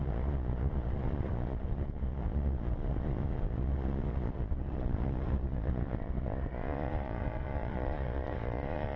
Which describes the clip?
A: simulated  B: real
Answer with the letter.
A